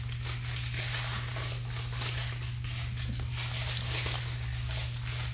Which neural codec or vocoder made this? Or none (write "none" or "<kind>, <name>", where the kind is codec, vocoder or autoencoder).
none